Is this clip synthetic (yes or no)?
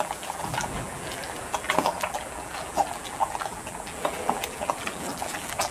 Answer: yes